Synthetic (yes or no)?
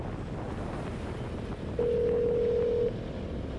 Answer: no